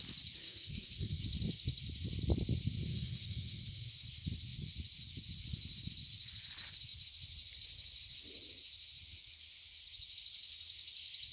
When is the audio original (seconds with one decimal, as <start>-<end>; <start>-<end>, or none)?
0.0-0.4; 1.2-2.9; 3.9-11.3